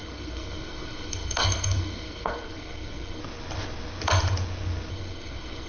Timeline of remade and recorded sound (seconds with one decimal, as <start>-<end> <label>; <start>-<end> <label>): 0.0-3.2 remade; 3.2-4.9 recorded; 4.9-5.7 remade